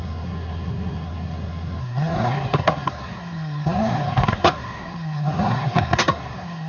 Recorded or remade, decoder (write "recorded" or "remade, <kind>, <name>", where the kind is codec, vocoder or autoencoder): remade, codec, SNAC